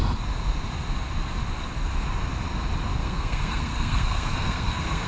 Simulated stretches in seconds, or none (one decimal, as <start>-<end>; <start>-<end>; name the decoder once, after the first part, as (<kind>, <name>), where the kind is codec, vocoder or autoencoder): 3.0-5.1 (codec, SNAC)